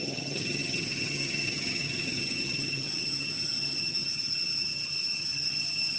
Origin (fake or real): fake